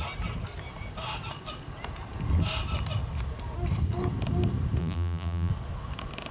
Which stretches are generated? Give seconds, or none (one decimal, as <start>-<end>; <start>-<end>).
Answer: 4.8-5.5